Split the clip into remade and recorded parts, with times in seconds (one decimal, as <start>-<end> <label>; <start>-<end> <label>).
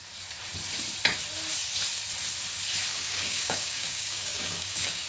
0.0-2.9 recorded; 2.9-5.1 remade